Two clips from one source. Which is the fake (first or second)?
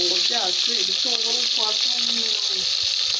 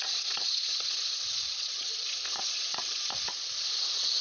second